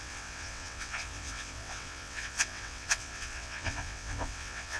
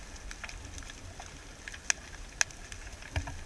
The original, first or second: second